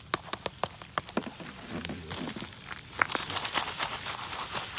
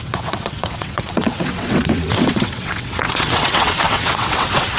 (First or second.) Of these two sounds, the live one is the first